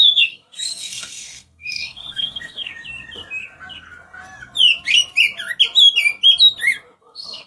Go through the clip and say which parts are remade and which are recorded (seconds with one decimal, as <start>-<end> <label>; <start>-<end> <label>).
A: 0.0-2.7 remade; 2.7-7.0 recorded; 7.0-7.5 remade